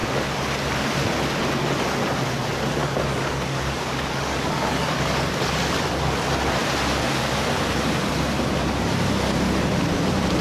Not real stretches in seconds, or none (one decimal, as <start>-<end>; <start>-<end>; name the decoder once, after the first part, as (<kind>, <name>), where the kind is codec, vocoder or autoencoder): 2.8-5.5 (codec, DAC)